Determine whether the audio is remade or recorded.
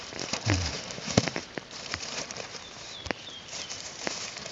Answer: remade